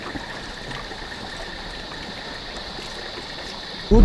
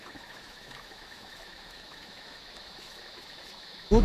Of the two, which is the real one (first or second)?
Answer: first